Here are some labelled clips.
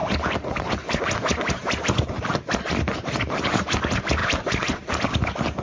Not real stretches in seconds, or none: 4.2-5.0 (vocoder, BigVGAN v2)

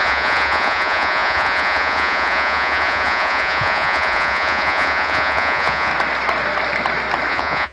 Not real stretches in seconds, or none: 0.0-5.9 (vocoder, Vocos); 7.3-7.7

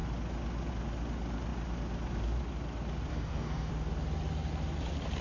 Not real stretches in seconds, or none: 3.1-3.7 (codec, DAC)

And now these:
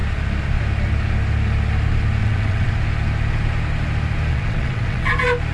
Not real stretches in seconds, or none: 2.2-2.7 (vocoder, WaveNeXt); 4.3-5.1

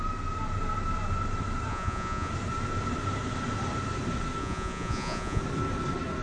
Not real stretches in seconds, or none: 1.7-2.3 (vocoder, Vocos); 4.4-5.4

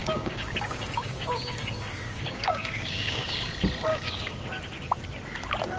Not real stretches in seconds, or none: 0.0-3.5 (codec, DAC); 3.9-4.4

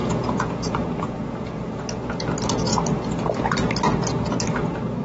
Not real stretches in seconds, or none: 0.0-1.8 (vocoder, Vocos)